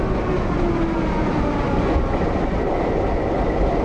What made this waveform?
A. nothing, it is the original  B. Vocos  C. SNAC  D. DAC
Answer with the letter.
A